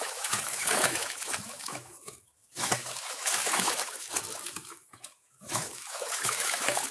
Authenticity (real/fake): fake